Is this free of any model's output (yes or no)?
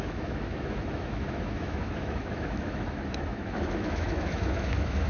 no